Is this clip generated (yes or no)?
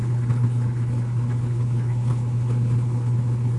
yes